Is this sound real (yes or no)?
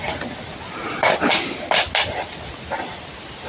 yes